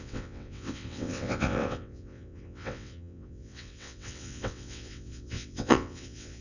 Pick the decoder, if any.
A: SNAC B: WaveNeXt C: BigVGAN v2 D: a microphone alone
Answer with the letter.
B